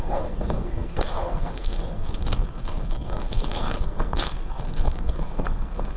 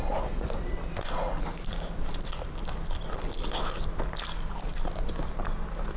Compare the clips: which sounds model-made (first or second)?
first